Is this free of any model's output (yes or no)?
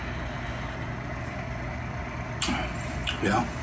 yes